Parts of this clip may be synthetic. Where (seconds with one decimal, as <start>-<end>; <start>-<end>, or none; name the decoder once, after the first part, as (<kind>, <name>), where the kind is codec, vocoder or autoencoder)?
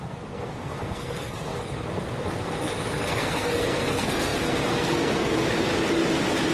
0.0-5.7 (codec, SNAC)